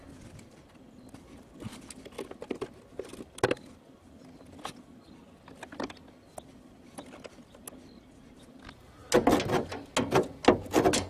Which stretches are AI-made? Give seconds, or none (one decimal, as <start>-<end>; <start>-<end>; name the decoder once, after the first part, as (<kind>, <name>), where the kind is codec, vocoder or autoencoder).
none